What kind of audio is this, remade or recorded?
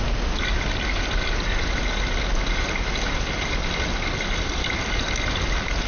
recorded